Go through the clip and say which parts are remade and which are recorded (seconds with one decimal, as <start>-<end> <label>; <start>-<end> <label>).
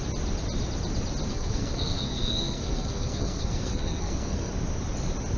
0.0-1.3 recorded; 1.3-4.5 remade; 4.5-5.4 recorded